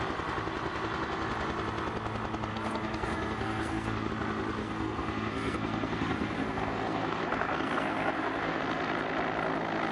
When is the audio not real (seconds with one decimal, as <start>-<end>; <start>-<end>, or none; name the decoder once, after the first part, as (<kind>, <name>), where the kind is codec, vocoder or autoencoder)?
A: 2.5-4.1 (codec, SNAC); 4.6-8.6